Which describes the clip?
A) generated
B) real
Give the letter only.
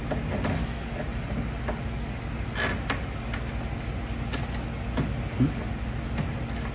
B